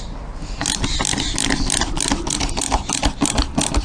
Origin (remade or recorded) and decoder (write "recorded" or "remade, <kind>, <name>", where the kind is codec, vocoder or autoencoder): recorded